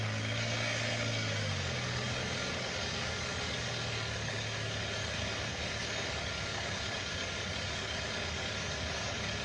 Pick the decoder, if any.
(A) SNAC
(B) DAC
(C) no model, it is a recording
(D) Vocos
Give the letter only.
B